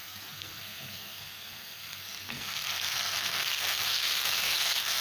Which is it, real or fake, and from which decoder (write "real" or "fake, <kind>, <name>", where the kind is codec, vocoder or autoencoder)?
fake, codec, SNAC